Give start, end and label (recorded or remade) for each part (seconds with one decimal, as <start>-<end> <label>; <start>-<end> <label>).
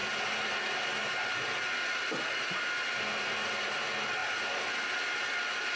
0.0-5.8 recorded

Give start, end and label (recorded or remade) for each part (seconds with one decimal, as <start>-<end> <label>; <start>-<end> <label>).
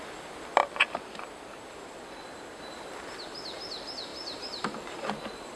0.0-4.1 recorded; 4.1-5.6 remade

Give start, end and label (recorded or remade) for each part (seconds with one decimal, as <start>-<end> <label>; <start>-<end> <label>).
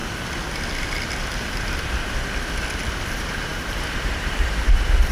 0.0-3.1 recorded; 3.1-5.1 remade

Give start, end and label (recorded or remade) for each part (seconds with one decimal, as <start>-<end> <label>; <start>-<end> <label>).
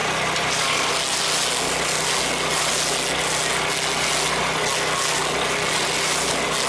0.0-0.9 remade; 0.9-6.7 recorded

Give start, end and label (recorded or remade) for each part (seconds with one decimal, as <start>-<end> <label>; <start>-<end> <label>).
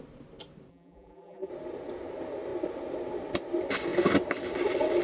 0.0-0.7 recorded; 0.7-1.5 remade; 1.5-5.0 recorded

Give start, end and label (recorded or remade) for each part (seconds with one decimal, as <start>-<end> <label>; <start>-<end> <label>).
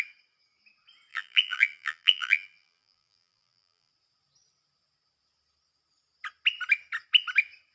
0.0-1.1 recorded; 1.1-3.9 remade; 3.9-7.7 recorded